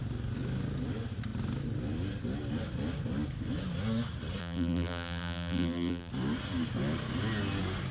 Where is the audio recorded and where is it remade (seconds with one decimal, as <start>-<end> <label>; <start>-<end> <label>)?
0.0-4.4 recorded; 4.4-6.1 remade; 6.1-7.9 recorded